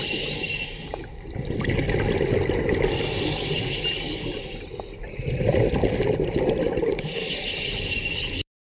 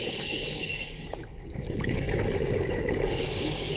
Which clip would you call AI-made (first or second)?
second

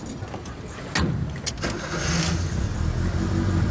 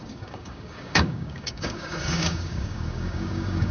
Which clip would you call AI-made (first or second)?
second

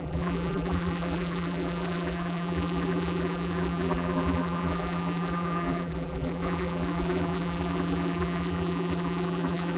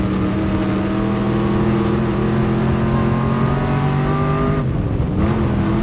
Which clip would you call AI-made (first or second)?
first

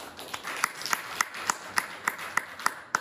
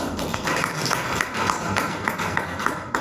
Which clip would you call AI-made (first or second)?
second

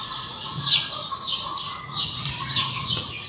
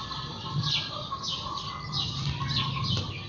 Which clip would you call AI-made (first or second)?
first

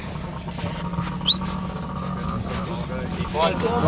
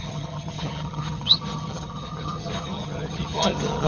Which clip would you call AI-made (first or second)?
second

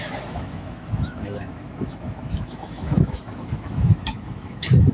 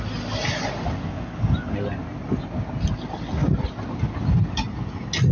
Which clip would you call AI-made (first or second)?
first